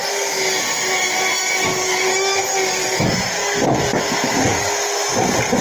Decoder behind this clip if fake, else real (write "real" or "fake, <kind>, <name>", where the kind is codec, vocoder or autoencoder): real